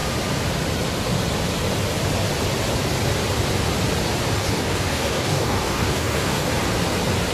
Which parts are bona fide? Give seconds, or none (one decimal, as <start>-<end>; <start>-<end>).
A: 0.0-4.4; 6.5-7.3